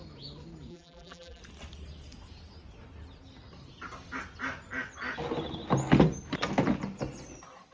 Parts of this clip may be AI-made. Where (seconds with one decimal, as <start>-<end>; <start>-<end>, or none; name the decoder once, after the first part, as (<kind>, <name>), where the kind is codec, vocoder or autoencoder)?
0.7-1.4 (vocoder, BigVGAN v2)

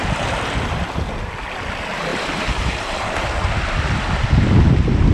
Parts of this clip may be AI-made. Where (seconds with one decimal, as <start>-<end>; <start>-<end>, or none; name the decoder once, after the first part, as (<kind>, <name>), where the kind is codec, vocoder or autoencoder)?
2.1-2.9 (vocoder, BigVGAN v2)

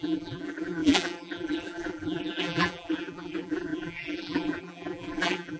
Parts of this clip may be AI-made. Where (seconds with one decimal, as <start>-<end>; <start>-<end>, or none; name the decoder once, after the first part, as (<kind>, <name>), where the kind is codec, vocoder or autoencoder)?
0.0-5.6 (vocoder, BigVGAN v2)